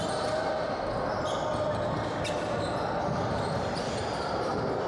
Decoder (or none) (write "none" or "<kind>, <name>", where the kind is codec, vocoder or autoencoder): none